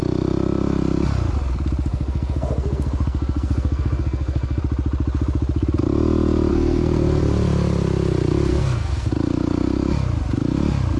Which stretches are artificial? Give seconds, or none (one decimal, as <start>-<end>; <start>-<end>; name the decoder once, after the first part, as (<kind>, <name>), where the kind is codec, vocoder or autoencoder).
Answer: 1.9-4.6 (codec, SNAC); 6.5-7.2; 8.5-9.1

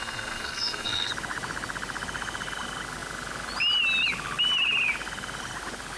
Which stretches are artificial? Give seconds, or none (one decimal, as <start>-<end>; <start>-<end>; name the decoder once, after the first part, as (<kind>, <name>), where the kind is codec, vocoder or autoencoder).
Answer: 0.0-1.1 (codec, SNAC)

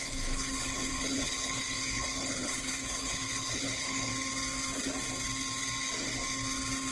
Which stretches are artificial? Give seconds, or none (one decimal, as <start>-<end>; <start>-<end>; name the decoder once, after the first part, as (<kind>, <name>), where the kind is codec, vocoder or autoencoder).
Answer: 0.0-4.1 (codec, HILCodec)

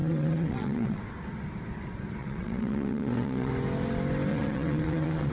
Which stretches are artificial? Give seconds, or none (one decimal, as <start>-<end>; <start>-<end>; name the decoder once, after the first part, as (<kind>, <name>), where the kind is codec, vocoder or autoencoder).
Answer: 0.0-1.0 (vocoder, WaveNeXt); 2.2-3.5; 4.3-5.3

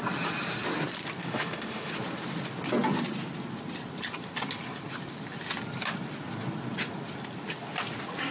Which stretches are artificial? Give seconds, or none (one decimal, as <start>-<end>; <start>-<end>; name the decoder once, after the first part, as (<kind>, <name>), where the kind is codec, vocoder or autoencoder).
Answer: 1.2-1.9 (autoencoder, DAC-VAE)

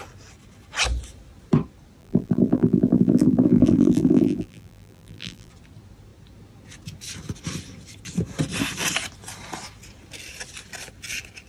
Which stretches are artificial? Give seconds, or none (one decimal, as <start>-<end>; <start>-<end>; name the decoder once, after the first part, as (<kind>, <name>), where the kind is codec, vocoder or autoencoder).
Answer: 2.0-5.5 (vocoder, BigVGAN v2)